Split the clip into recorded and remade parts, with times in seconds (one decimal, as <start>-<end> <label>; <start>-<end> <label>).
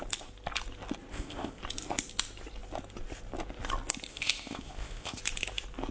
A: 0.0-1.1 recorded; 1.1-1.6 remade; 1.6-4.1 recorded; 4.1-5.2 remade; 5.2-5.9 recorded